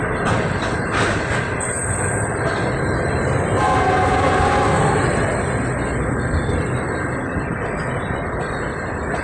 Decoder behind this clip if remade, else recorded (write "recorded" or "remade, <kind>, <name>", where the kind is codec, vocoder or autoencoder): recorded